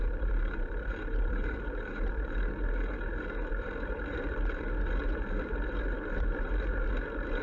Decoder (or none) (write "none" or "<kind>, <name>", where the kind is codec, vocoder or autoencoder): vocoder, BigVGAN v2